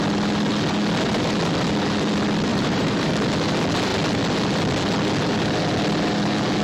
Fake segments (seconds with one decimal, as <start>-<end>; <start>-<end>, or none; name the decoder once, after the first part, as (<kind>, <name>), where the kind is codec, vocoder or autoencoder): 2.5-3.1 (vocoder, BigVGAN v2)